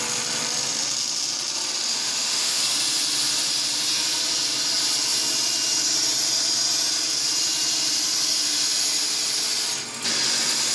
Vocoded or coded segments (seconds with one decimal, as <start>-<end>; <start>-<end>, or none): 1.9-2.6